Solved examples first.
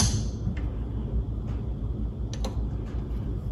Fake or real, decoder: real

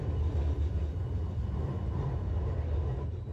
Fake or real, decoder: real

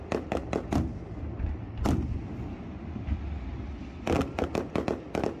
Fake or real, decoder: real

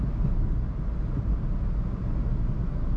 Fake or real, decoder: real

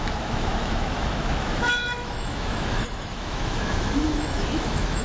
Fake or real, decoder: fake, autoencoder, DAC-VAE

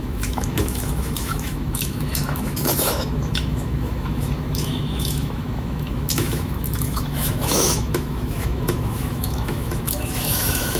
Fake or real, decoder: fake, autoencoder, DAC-VAE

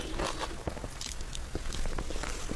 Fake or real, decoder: real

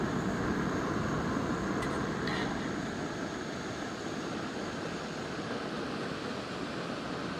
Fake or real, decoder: real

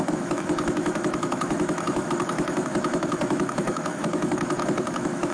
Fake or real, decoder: fake, autoencoder, DAC-VAE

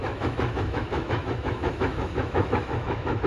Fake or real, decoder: fake, autoencoder, DAC-VAE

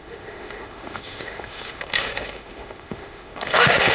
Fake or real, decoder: fake, autoencoder, DAC-VAE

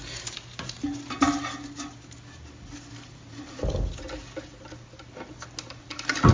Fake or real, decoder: real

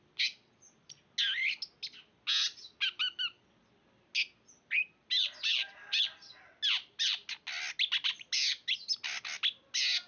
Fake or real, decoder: real